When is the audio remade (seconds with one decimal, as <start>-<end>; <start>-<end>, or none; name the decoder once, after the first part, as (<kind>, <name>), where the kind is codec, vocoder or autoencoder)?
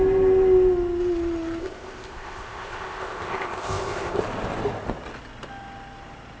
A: 1.6-4.2 (codec, ZipCodec)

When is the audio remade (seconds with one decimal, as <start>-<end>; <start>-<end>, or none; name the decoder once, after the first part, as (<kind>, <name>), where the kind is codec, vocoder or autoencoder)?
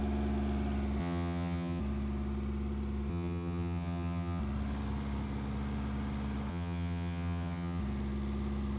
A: 1.0-1.8 (vocoder, HiFi-GAN); 3.1-4.4; 6.5-7.8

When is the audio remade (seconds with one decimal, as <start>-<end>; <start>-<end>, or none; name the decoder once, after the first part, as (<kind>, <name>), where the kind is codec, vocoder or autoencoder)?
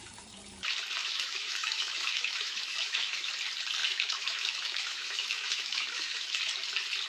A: 1.0-3.3 (autoencoder, DAC-VAE); 3.8-6.4